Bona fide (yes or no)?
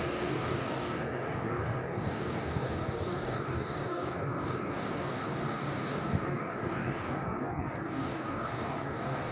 no